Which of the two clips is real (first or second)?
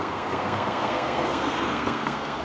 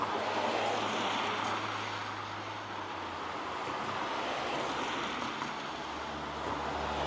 second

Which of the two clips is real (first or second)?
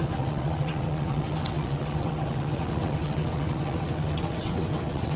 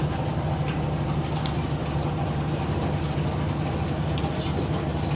second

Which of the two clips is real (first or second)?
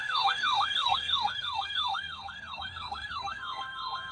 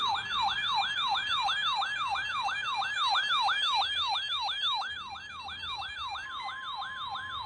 second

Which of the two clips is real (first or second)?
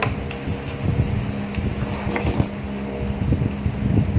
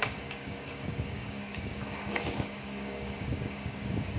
first